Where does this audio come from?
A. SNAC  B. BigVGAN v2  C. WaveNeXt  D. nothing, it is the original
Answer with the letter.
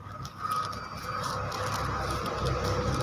D